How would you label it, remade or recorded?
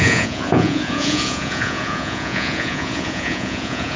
remade